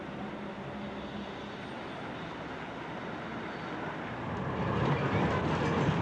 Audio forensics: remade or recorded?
recorded